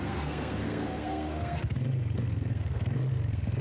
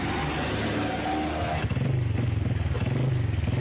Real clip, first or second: second